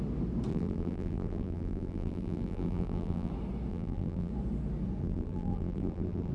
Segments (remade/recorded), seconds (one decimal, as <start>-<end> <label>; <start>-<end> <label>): 0.0-0.5 recorded; 0.5-3.3 remade; 3.3-3.7 recorded; 3.7-4.3 remade; 4.3-5.0 recorded; 5.0-6.3 remade